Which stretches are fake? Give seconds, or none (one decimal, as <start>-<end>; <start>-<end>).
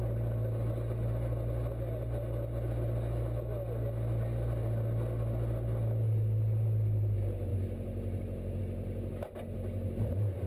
none